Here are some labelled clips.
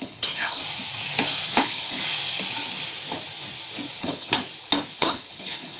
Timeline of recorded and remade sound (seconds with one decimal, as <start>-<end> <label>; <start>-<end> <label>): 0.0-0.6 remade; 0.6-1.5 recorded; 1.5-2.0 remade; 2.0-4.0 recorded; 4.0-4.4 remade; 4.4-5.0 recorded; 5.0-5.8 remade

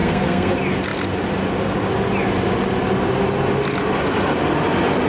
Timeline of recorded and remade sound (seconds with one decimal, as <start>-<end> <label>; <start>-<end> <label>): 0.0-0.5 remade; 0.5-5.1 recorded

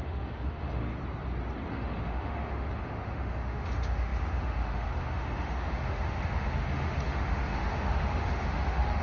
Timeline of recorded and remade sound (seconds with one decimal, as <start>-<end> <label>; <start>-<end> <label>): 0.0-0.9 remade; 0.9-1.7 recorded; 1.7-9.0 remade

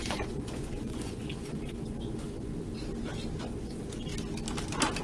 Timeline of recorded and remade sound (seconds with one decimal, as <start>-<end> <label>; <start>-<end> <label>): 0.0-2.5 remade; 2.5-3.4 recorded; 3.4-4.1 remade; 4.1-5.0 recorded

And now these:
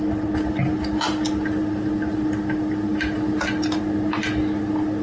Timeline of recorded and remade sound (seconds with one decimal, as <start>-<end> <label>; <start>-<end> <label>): 0.0-5.0 recorded